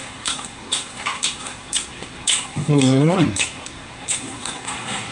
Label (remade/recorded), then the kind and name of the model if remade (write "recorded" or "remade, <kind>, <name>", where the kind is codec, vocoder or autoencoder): remade, codec, SNAC